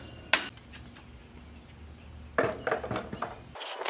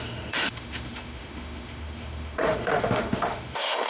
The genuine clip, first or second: first